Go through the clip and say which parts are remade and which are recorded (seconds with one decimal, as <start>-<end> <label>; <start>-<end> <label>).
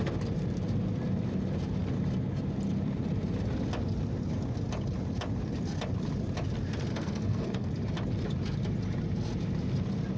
0.0-6.9 recorded; 6.9-7.7 remade; 7.7-10.2 recorded